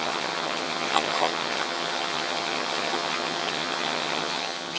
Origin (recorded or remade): remade